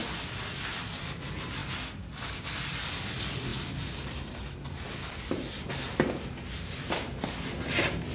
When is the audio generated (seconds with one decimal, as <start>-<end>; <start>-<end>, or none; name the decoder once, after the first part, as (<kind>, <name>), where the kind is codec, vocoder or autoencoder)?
none